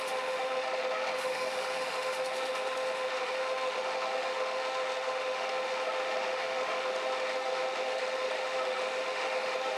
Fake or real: fake